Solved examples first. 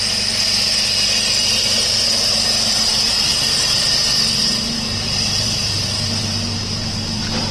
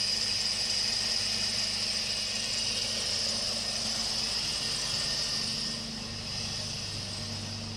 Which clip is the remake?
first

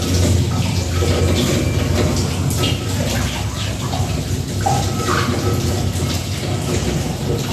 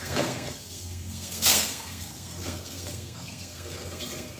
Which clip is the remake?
second